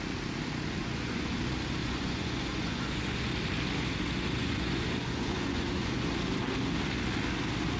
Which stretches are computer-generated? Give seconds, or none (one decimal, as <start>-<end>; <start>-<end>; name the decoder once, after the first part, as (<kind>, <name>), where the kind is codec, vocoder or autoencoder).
0.8-1.4 (vocoder, Vocos); 1.8-3.3; 4.4-6.1